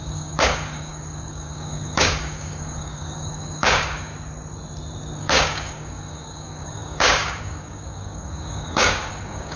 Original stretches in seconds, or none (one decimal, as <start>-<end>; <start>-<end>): 4.1-5.2